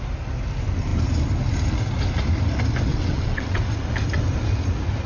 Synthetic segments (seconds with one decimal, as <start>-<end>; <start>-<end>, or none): 2.9-3.6